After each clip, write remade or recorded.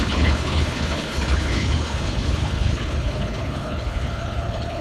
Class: remade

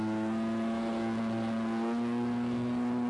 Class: recorded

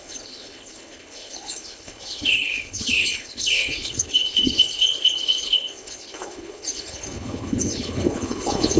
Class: remade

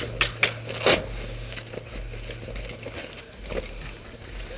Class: recorded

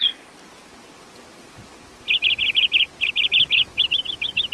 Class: recorded